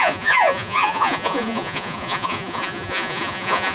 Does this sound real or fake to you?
fake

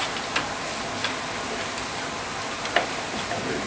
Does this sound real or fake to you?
real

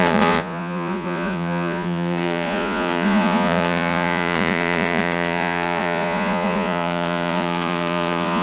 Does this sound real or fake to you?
fake